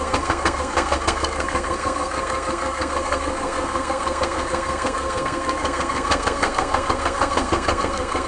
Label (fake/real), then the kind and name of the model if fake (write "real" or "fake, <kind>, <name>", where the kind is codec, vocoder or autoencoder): fake, codec, SNAC